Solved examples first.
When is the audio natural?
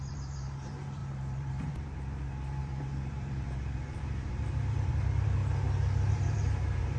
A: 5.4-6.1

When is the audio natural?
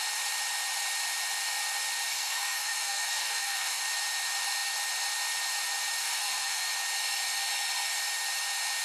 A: 0.0-2.1; 3.8-6.0; 6.6-8.8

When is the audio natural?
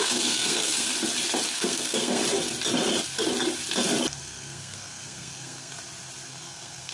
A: 0.9-1.5; 2.2-4.2; 5.7-6.3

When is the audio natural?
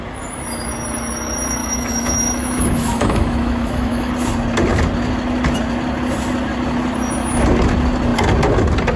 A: 0.0-1.6; 4.1-9.0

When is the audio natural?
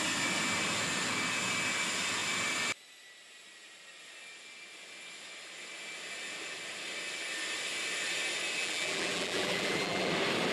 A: 0.0-8.6; 10.1-10.5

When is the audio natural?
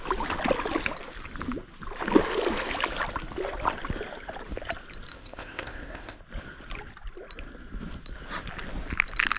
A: 0.0-5.1; 6.2-9.4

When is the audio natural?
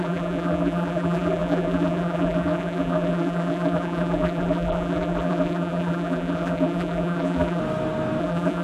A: 7.6-8.2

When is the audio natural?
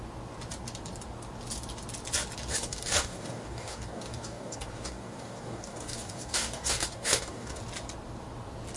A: 0.0-2.5; 7.6-8.8